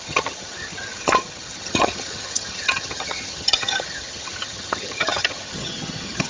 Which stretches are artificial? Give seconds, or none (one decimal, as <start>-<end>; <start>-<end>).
0.0-6.3